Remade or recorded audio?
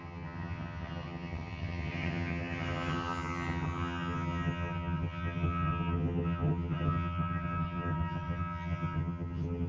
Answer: remade